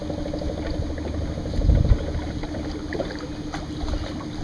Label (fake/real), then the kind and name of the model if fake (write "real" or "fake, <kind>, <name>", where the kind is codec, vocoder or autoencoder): real